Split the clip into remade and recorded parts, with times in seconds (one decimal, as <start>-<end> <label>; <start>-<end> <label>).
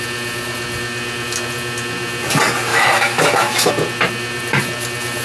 0.0-2.7 recorded; 2.7-3.7 remade; 3.7-5.2 recorded